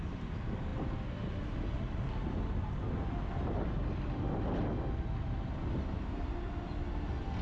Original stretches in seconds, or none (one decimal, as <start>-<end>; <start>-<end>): 0.0-7.4